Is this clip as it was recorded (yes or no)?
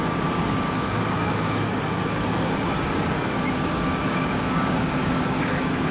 no